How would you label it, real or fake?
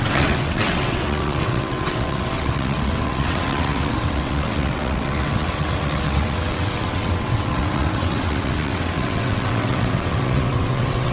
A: fake